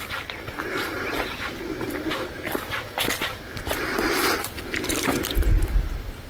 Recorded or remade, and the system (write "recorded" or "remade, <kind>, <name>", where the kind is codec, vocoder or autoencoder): recorded